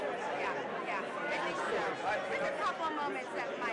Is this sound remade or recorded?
recorded